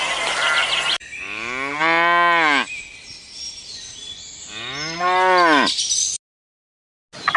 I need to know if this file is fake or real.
real